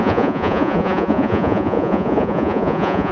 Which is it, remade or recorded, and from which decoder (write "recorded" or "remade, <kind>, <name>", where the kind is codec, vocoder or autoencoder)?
remade, vocoder, Vocos